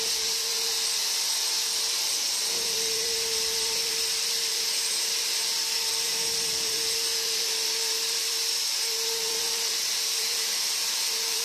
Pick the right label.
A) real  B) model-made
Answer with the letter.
B